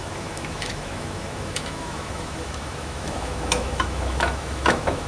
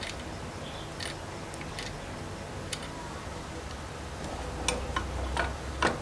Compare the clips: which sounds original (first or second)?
second